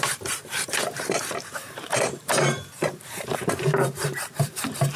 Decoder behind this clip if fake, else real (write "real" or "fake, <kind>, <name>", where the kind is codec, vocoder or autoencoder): fake, vocoder, BigVGAN v2